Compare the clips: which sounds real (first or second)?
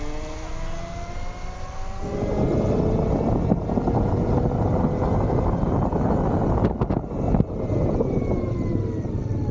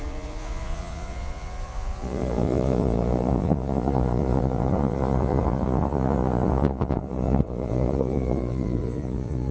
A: first